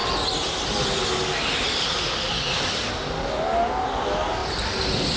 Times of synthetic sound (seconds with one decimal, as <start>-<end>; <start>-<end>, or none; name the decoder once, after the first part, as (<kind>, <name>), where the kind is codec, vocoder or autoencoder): none